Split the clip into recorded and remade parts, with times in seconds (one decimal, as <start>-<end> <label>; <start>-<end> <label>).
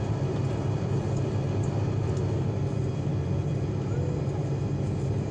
0.0-5.3 recorded